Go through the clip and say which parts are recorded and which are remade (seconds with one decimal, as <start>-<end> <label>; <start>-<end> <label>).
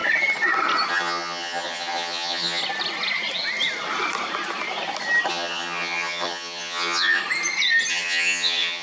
0.0-0.9 recorded; 0.9-2.6 remade; 2.6-5.3 recorded; 5.3-7.2 remade; 7.2-7.9 recorded; 7.9-8.8 remade